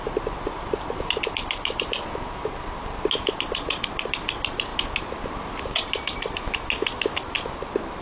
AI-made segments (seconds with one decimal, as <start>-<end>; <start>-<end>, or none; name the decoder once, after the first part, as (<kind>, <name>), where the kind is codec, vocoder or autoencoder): none

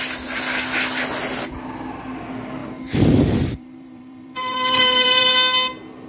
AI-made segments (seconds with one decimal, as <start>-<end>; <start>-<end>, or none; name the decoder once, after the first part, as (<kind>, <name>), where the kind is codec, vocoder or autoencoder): 2.6-5.3 (vocoder, BigVGAN v2)

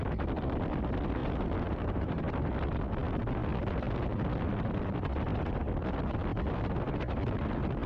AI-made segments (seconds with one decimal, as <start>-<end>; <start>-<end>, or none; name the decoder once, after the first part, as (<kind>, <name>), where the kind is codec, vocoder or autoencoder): 1.2-2.2 (vocoder, BigVGAN v2)

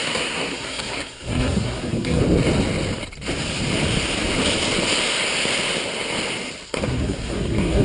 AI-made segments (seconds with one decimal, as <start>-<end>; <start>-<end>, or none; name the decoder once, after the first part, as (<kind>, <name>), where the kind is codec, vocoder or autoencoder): 0.0-2.2 (codec, SNAC); 6.7-7.8

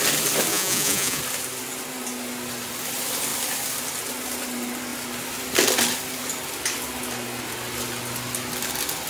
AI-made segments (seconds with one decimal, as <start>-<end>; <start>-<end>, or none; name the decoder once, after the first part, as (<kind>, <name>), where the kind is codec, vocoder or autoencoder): 0.5-1.2 (vocoder, Vocos)

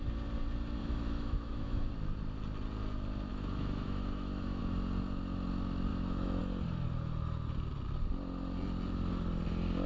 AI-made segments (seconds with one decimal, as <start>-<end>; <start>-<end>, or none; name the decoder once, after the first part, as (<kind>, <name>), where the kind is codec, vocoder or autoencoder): 0.8-1.9 (autoencoder, DAC-VAE); 3.3-4.6; 5.9-6.4

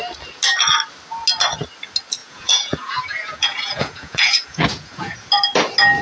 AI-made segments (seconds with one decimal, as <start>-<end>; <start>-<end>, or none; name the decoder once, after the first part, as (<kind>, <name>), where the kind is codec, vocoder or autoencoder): 2.2-5.3 (vocoder, Vocos)